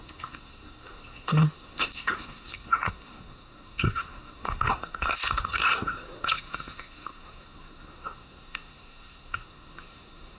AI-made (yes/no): yes